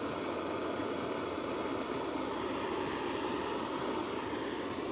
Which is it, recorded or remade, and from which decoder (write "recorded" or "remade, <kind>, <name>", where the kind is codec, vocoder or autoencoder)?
recorded